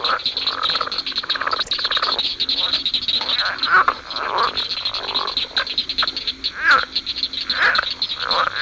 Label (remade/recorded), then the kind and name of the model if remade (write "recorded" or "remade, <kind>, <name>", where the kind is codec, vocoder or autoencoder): recorded